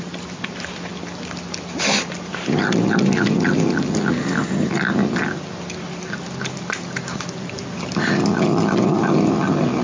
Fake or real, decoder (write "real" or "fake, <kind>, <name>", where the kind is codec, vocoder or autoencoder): real